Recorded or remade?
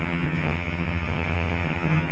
remade